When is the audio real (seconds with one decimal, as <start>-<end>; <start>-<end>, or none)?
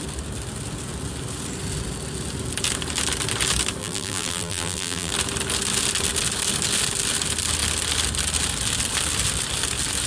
0.0-3.8; 5.1-10.1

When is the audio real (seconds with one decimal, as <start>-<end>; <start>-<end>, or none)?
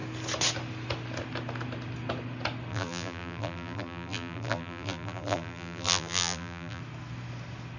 0.0-2.7; 6.8-7.8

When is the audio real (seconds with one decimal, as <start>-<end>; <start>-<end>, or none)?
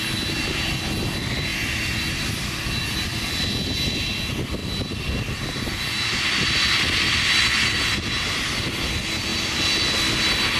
0.0-1.5; 3.3-4.6; 5.8-10.6